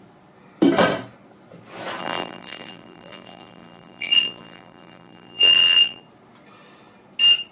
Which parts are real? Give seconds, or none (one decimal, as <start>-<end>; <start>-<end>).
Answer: 0.0-2.0; 6.0-7.5